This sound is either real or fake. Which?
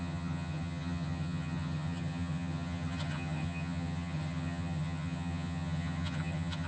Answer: fake